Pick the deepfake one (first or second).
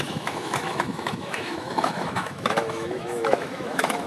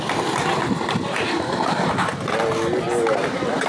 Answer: first